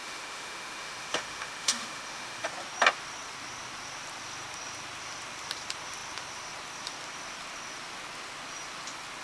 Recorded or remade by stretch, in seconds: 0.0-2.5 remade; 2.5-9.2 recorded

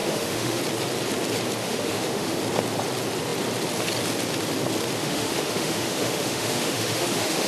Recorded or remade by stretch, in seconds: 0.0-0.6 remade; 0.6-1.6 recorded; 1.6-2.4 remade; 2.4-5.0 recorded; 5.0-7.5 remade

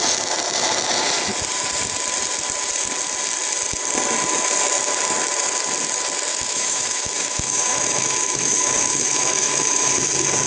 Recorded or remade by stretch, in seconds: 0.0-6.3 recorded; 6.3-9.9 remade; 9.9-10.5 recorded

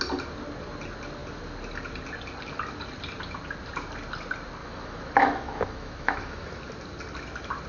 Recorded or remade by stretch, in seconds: 0.0-4.6 recorded; 4.6-6.6 remade; 6.6-7.7 recorded

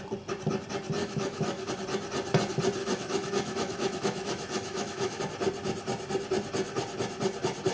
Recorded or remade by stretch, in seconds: 0.0-1.0 recorded; 1.0-1.7 remade; 1.7-2.8 recorded; 2.8-5.2 remade; 5.2-7.7 recorded